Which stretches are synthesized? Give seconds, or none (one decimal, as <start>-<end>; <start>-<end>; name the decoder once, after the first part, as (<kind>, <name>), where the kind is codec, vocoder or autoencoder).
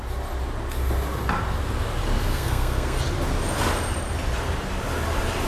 2.3-3.0 (codec, SNAC)